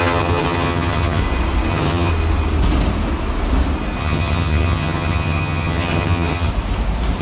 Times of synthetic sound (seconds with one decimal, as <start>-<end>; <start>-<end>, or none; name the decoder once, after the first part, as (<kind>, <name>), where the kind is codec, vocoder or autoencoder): 0.0-1.2 (vocoder, HiFi-GAN); 1.7-2.1; 4.0-6.5